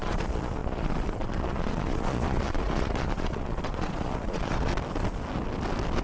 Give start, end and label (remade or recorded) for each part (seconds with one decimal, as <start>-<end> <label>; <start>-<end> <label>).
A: 0.0-4.7 remade; 4.7-6.0 recorded